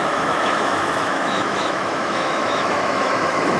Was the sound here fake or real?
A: fake